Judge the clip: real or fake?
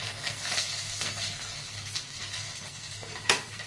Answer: fake